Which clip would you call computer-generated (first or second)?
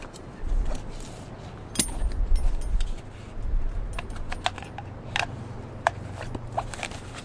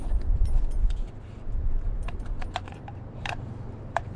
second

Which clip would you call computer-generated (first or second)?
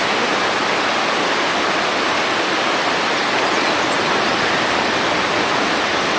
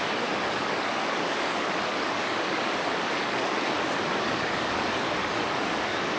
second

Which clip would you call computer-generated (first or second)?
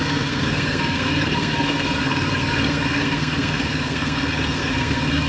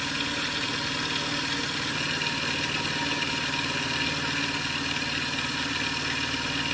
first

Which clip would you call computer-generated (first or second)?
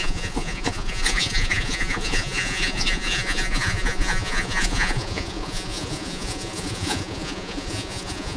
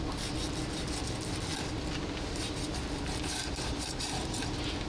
first